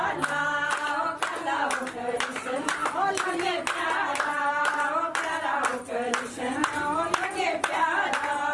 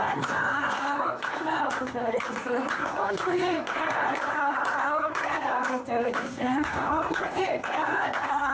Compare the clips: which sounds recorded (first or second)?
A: first